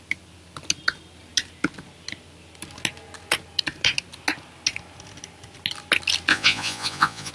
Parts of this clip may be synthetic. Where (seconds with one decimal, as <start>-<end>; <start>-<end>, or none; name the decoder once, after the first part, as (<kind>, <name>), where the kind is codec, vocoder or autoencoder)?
6.3-7.3 (vocoder, Vocos)

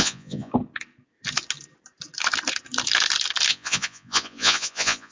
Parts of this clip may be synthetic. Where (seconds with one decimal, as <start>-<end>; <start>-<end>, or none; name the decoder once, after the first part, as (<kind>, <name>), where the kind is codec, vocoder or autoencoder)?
0.0-0.5 (vocoder, Vocos); 3.5-5.1

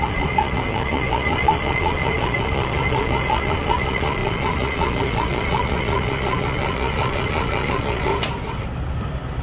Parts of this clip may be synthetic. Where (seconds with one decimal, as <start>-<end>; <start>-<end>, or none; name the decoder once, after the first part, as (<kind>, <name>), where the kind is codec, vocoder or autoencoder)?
0.0-8.1 (vocoder, Vocos)